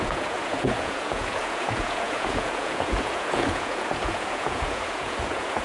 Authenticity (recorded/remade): remade